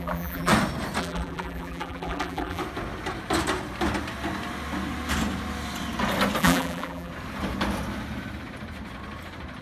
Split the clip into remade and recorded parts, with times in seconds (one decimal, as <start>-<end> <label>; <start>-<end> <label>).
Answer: 0.0-0.5 remade; 0.5-1.0 recorded; 1.0-2.6 remade; 2.6-6.4 recorded; 6.4-7.1 remade; 7.1-9.6 recorded

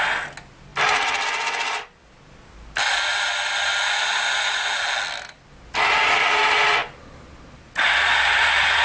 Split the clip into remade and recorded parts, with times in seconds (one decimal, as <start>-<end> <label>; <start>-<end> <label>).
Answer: 0.0-8.8 recorded